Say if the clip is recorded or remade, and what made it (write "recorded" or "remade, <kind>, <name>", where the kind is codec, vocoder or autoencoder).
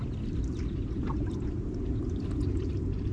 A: recorded